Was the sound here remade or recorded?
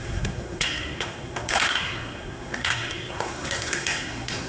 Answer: remade